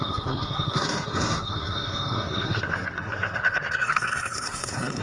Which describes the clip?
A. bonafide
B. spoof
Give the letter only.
B